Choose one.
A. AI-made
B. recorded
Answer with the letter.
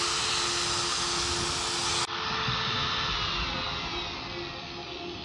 B